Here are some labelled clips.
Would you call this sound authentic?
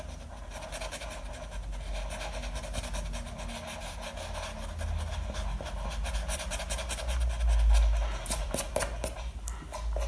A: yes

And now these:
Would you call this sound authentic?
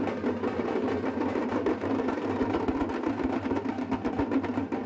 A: yes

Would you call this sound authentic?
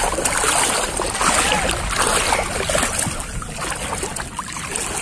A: yes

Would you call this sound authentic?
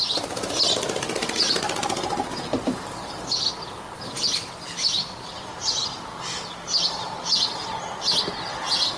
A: yes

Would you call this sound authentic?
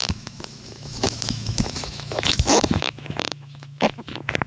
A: no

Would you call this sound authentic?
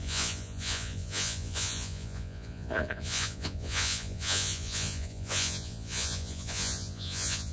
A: no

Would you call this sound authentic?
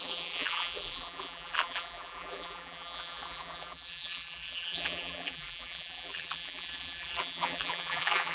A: no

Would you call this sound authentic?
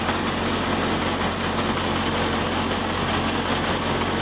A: yes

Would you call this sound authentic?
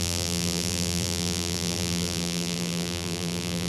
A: no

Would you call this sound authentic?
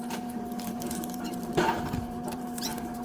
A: no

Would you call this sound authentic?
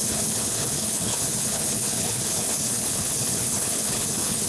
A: no